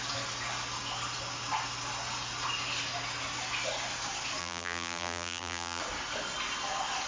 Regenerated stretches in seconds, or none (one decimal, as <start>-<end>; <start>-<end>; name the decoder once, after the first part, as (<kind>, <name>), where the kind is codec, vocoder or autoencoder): 4.4-5.8 (vocoder, BigVGAN v2)